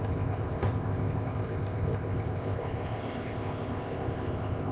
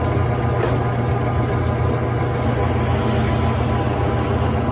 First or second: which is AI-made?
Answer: first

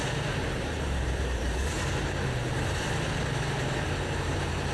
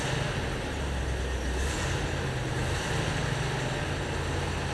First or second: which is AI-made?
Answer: first